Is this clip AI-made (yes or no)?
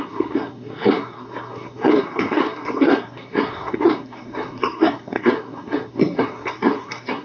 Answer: yes